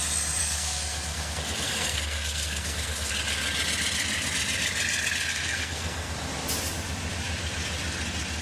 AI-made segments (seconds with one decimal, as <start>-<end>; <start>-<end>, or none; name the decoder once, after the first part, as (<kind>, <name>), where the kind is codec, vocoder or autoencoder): 0.4-3.1 (codec, SNAC); 5.3-6.1